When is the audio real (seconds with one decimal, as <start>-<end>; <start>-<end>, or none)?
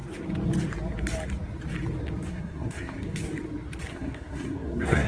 0.0-2.3; 3.2-3.9